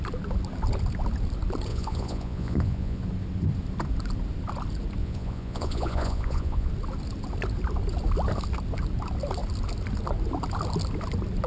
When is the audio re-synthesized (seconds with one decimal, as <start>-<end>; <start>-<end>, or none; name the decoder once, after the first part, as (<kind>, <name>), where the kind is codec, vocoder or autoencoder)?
1.7-3.0 (vocoder, Vocos); 5.0-6.7